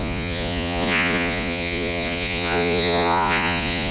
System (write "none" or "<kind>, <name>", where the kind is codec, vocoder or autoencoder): vocoder, Vocos